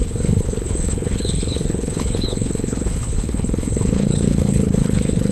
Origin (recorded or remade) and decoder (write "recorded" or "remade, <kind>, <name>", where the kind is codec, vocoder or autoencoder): remade, codec, HILCodec